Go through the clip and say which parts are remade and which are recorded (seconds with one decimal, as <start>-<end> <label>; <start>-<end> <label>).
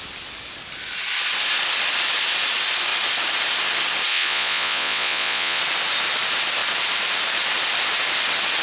0.0-4.1 recorded; 4.1-5.6 remade; 5.6-8.6 recorded